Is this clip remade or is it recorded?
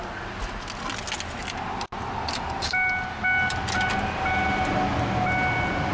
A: recorded